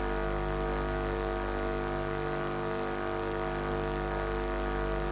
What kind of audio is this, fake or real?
real